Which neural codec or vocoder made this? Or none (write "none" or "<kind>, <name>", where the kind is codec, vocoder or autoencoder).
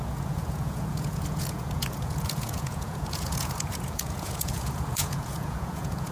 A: vocoder, Vocos